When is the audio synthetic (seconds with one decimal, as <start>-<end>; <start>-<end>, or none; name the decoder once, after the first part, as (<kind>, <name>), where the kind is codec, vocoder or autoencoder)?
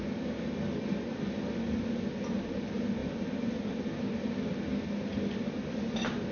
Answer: none